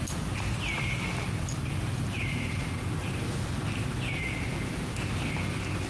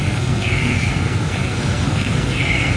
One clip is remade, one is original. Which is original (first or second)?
first